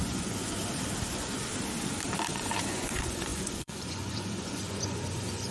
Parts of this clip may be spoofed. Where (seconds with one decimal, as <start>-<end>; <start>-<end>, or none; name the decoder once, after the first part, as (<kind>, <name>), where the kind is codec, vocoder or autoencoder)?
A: 0.0-0.6 (vocoder, Vocos); 1.1-1.5; 2.3-5.5